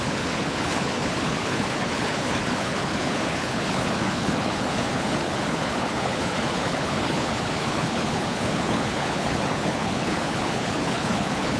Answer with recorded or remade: remade